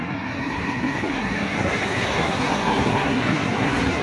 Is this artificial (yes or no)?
yes